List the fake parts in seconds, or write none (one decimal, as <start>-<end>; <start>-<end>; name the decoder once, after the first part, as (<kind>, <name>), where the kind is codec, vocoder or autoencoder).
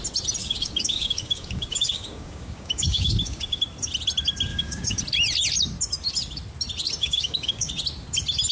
0.4-3.6 (codec, DAC); 4.5-5.0; 7.0-7.7